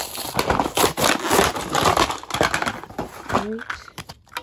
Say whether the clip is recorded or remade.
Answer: recorded